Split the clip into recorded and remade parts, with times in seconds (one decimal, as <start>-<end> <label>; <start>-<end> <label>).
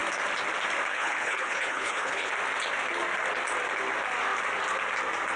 0.0-0.9 recorded; 0.9-2.3 remade; 2.3-5.4 recorded